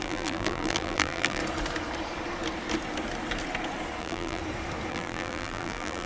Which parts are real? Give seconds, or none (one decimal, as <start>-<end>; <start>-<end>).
1.4-4.0; 4.4-4.9